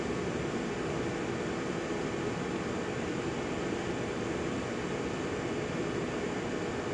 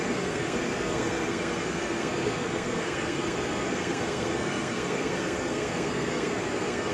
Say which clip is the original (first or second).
first